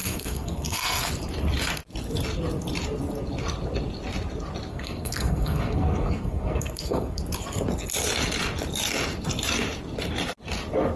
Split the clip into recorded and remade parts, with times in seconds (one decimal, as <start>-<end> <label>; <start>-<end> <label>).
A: 0.0-1.1 remade; 1.1-4.7 recorded; 4.7-7.2 remade; 7.2-11.0 recorded